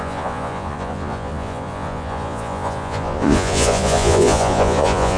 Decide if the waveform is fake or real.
fake